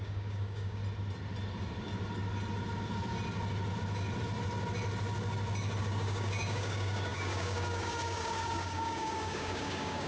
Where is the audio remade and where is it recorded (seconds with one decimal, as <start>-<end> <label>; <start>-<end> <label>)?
0.0-0.8 remade; 0.8-5.8 recorded; 5.8-10.1 remade